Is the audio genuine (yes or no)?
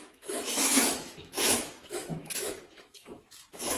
no